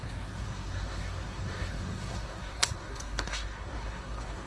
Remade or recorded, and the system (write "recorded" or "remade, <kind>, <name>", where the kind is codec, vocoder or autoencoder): remade, codec, SNAC